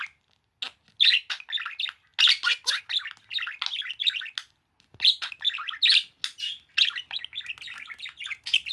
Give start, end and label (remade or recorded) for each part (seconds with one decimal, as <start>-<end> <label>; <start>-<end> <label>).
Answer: 0.0-8.7 recorded